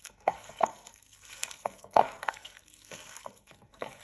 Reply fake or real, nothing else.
fake